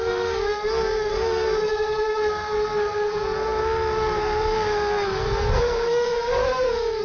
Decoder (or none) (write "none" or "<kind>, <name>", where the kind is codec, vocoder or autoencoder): codec, SNAC